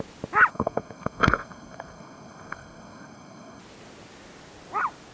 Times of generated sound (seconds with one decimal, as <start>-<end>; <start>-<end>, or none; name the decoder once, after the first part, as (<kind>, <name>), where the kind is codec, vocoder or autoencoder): 0.5-3.6 (codec, SNAC)